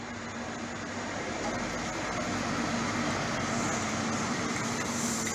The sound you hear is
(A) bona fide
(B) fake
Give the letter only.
A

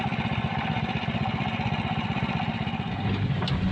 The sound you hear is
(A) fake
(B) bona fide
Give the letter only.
B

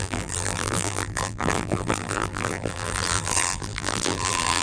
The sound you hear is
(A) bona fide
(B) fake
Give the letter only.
B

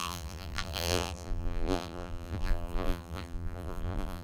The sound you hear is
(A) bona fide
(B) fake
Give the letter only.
B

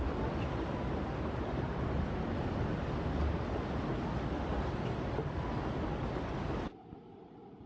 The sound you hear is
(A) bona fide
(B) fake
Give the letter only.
A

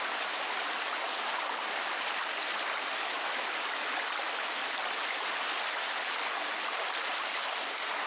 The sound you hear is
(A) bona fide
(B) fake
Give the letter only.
B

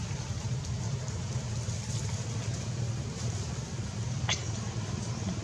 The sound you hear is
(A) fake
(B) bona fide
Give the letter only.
B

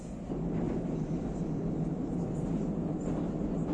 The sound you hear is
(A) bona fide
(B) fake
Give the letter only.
A